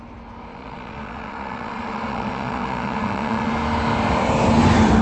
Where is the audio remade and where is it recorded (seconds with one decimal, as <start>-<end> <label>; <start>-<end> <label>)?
0.0-0.5 recorded; 0.5-3.5 remade; 3.5-5.0 recorded